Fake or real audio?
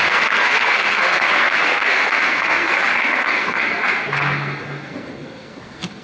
fake